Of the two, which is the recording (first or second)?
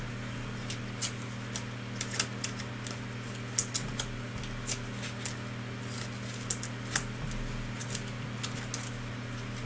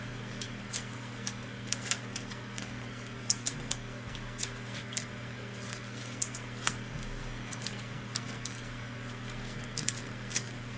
first